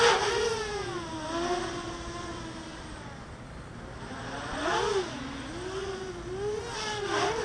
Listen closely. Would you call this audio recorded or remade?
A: recorded